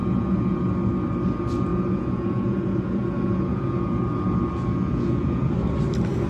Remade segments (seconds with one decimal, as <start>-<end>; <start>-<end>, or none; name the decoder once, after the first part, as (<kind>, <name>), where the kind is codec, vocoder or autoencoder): 0.0-0.6 (vocoder, Vocos); 1.7-5.5